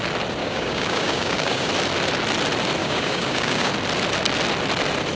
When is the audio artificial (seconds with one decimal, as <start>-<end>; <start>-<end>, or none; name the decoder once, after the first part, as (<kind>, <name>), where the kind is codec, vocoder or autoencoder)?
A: 0.4-1.7 (codec, DAC); 2.8-3.7